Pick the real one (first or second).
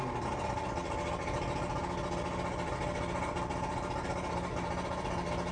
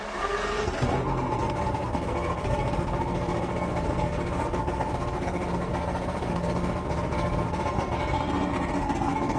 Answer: first